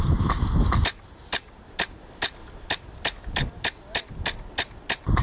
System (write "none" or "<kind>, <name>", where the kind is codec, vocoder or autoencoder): none